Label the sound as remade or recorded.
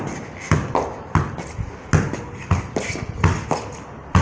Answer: recorded